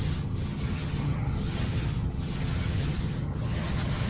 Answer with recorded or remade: remade